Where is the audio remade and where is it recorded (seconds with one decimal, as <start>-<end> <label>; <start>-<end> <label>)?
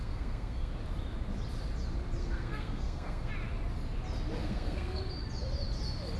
0.0-0.7 remade; 0.7-2.2 recorded; 2.2-3.3 remade; 3.3-4.4 recorded; 4.4-5.0 remade; 5.0-6.2 recorded